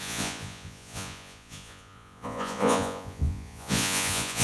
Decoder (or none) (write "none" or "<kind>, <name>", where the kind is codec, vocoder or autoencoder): vocoder, Vocos